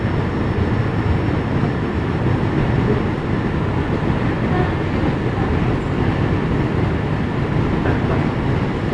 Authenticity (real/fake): real